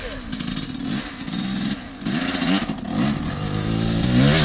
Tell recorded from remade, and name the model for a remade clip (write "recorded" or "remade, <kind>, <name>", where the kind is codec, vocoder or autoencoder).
recorded